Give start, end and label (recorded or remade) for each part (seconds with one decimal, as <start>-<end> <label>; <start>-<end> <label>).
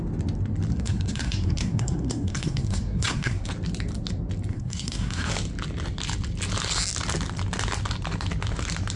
0.0-0.7 recorded; 0.7-3.5 remade; 3.5-4.5 recorded; 4.5-5.3 remade; 5.3-9.0 recorded